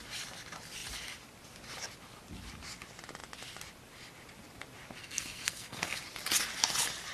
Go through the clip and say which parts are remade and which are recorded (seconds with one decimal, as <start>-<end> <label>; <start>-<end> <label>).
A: 0.0-5.0 recorded; 5.0-6.0 remade; 6.0-7.1 recorded